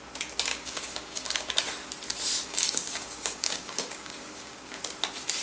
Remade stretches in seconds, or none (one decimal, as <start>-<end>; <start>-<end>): 0.5-1.5; 2.5-4.8

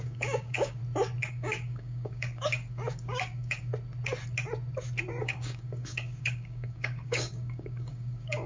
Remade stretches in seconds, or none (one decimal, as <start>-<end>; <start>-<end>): 0.0-0.8; 1.3-3.7; 5.2-8.5

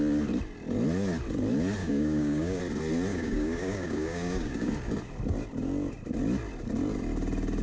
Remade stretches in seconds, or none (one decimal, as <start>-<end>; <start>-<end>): 1.8-2.6; 3.1-4.7

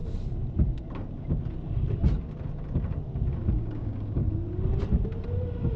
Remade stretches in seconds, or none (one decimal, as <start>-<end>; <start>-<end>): 3.5-4.2

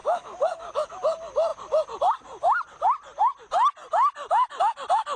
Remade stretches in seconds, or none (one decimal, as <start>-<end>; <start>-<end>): 0.0-0.9

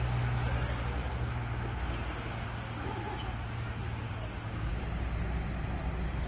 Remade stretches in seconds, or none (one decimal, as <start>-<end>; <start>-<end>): none

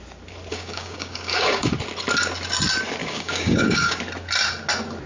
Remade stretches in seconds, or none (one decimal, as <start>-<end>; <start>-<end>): 0.5-1.7; 3.0-4.0

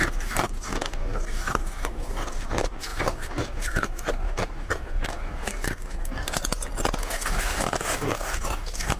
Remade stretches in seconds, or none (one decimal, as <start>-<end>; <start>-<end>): 0.0-6.4; 7.0-9.0